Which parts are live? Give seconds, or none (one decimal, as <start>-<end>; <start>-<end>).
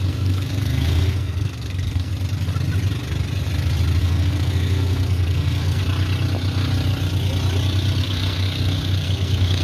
2.1-4.0; 5.8-8.0